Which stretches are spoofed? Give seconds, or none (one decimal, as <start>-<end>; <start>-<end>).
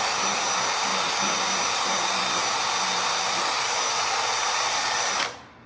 none